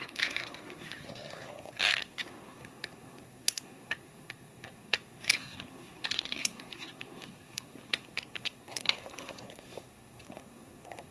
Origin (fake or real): fake